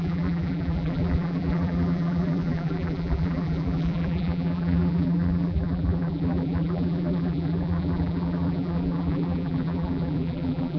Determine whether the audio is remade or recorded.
remade